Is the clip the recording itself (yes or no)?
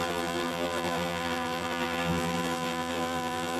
no